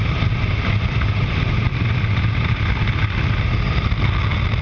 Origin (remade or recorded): recorded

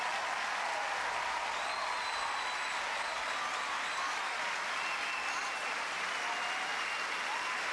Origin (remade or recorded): recorded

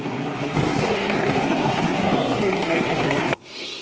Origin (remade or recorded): remade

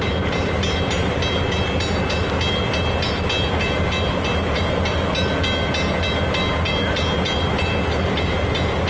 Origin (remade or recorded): recorded